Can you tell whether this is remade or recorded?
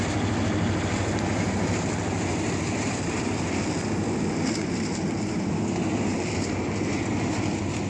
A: recorded